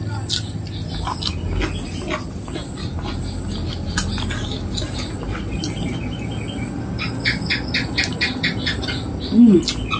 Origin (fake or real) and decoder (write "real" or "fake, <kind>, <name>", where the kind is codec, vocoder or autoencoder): real